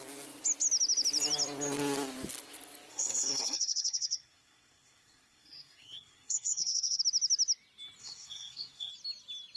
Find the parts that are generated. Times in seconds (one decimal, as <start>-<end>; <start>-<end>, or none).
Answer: 2.9-7.0; 8.0-8.9